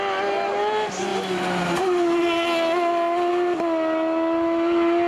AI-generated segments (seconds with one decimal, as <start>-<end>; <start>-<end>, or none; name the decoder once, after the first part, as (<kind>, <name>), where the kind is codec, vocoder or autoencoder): none